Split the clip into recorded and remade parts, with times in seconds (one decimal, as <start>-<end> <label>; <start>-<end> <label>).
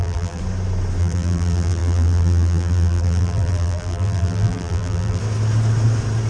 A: 0.0-0.4 remade; 0.4-1.0 recorded; 1.0-5.2 remade; 5.2-6.3 recorded